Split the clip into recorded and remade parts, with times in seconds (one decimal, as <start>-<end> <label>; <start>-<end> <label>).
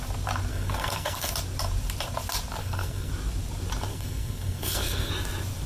0.0-0.5 recorded; 0.5-1.3 remade; 1.3-2.6 recorded; 2.6-3.1 remade; 3.1-3.9 recorded; 3.9-5.1 remade; 5.1-5.7 recorded